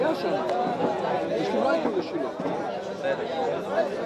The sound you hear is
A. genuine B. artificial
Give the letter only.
A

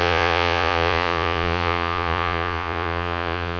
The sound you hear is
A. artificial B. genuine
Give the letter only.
A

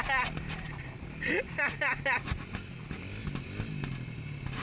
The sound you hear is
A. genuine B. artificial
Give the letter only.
A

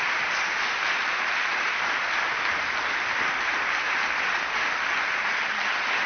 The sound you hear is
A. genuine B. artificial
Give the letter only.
A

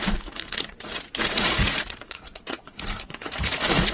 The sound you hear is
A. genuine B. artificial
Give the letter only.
B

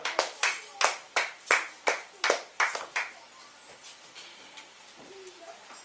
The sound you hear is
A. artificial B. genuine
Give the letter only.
B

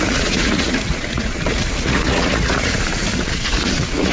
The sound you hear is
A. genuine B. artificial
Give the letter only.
B